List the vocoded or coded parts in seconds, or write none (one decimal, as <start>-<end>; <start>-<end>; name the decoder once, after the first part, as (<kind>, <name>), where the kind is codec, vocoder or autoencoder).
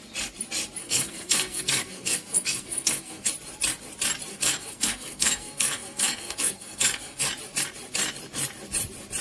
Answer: 0.8-3.3 (codec, SNAC); 4.3-7.3